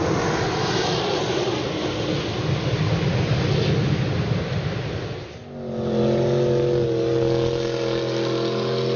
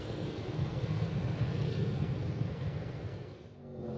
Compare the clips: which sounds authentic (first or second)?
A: first